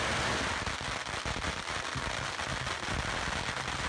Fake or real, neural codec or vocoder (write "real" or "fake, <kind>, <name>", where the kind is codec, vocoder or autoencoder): real